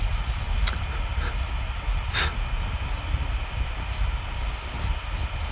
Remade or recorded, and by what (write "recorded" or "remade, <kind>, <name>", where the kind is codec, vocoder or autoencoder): recorded